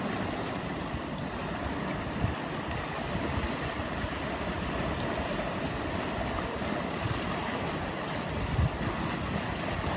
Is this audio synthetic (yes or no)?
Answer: no